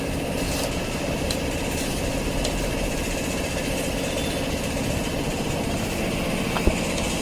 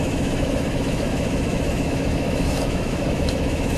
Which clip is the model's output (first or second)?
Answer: second